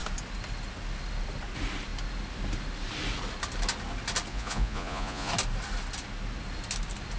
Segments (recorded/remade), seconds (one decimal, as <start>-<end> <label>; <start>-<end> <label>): 0.0-4.3 recorded; 4.3-5.3 remade; 5.3-7.2 recorded